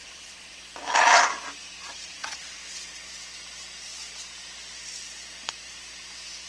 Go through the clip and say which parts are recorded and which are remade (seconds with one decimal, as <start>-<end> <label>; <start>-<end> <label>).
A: 0.0-0.6 remade; 0.6-1.6 recorded; 1.6-2.6 remade; 2.6-6.5 recorded